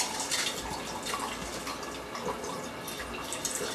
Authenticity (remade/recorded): recorded